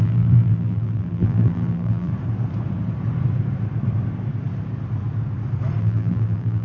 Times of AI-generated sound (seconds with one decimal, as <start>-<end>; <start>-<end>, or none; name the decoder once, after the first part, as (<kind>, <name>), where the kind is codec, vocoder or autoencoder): 0.0-2.1 (vocoder, BigVGAN v2); 5.8-6.6